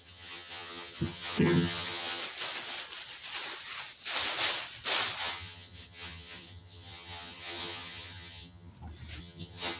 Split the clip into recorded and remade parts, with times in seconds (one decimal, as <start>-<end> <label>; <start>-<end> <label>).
0.0-2.2 remade; 2.2-5.2 recorded; 5.2-8.7 remade; 8.7-9.2 recorded; 9.2-9.8 remade

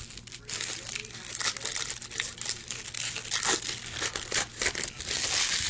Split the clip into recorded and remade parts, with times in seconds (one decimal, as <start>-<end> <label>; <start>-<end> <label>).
0.0-5.7 recorded

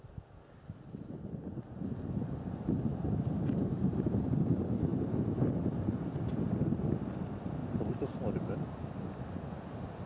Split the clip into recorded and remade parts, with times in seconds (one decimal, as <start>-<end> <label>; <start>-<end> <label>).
0.0-2.9 recorded; 2.9-4.3 remade; 4.3-4.9 recorded; 4.9-5.4 remade; 5.4-7.6 recorded; 7.6-8.6 remade; 8.6-10.1 recorded

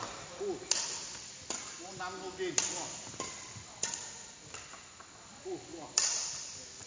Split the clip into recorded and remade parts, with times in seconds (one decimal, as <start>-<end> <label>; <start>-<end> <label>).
0.0-5.7 recorded; 5.7-6.3 remade; 6.3-6.9 recorded